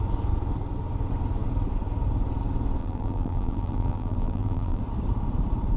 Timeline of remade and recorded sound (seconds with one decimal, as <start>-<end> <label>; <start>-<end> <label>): 0.0-2.8 recorded; 2.8-4.8 remade; 4.8-5.8 recorded